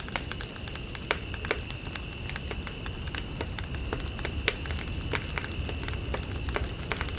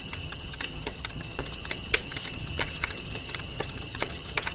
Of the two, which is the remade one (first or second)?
second